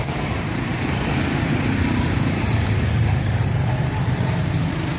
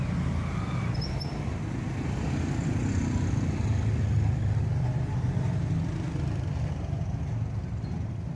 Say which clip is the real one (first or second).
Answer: second